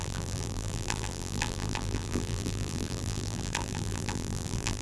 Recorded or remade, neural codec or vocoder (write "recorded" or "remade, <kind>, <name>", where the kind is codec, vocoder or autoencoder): remade, vocoder, BigVGAN v2